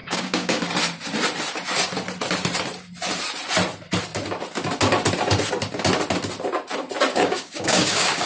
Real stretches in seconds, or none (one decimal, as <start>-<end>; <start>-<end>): 0.6-7.1